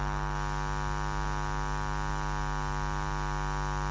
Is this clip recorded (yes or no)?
yes